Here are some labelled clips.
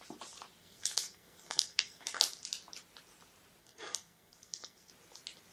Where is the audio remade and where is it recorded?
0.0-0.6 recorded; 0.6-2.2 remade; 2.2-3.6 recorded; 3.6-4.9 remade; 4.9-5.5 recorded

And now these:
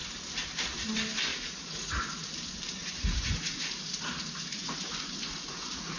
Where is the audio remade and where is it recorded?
0.0-1.3 recorded; 1.3-2.3 remade; 2.3-2.8 recorded; 2.8-4.1 remade; 4.1-4.6 recorded; 4.6-6.0 remade

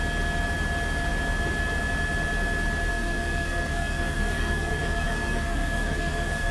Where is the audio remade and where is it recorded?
0.0-2.9 recorded; 2.9-6.5 remade

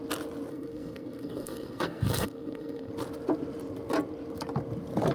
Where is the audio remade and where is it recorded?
0.0-0.5 recorded; 0.5-2.9 remade; 2.9-5.1 recorded

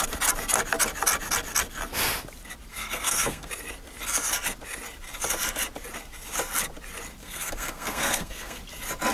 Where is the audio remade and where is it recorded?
0.0-2.7 recorded; 2.7-3.5 remade; 3.5-7.2 recorded; 7.2-8.6 remade; 8.6-9.1 recorded

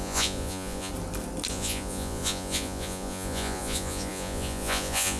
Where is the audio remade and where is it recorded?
0.0-0.9 remade; 0.9-1.5 recorded; 1.5-5.2 remade

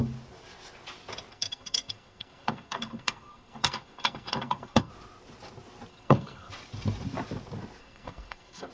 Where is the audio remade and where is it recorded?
0.0-1.3 recorded; 1.3-4.9 remade; 4.9-5.9 recorded; 5.9-6.5 remade; 6.5-7.8 recorded; 7.8-8.7 remade